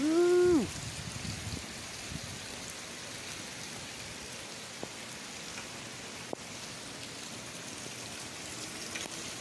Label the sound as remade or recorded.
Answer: recorded